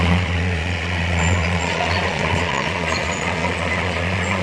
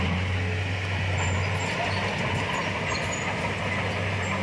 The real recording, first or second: second